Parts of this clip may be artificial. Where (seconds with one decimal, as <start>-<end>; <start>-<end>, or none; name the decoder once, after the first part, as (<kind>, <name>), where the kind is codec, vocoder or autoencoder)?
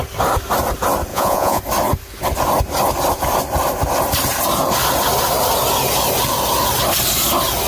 1.1-1.6 (vocoder, Vocos)